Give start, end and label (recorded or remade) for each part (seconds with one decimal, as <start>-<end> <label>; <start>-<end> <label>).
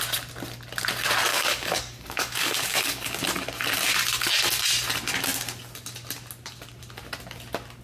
0.0-1.3 recorded; 1.3-3.2 remade; 3.2-7.8 recorded